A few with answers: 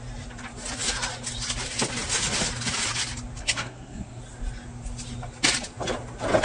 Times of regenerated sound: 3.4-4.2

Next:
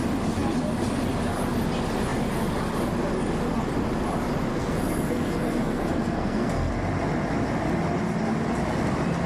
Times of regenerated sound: 4.5-6.7

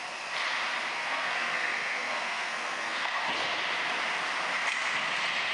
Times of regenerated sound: 0.9-3.2

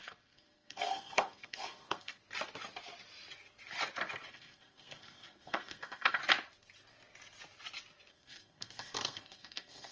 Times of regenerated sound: 0.0-2.2; 4.3-6.2; 8.1-9.9

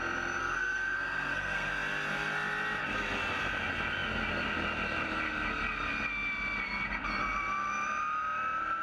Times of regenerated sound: 0.4-1.7

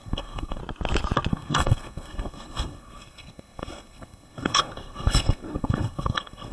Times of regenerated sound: 0.0-0.6; 1.3-6.5